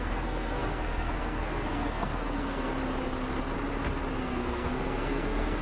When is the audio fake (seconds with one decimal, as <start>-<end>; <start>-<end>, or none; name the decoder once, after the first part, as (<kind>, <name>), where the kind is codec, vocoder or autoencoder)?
0.0-2.7 (codec, SNAC); 4.2-5.6